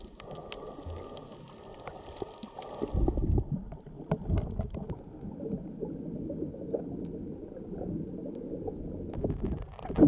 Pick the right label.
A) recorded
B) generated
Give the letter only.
A